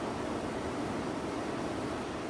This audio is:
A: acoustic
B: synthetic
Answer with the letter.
A